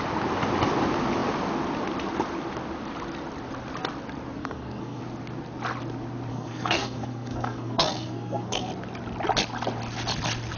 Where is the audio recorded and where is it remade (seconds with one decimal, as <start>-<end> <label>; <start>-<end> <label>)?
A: 0.0-4.4 recorded; 4.4-5.0 remade; 5.0-6.3 recorded; 6.3-8.7 remade; 8.7-10.6 recorded